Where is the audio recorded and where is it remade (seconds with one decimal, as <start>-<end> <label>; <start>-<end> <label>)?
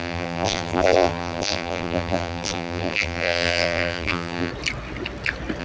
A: 0.0-4.5 remade; 4.5-5.6 recorded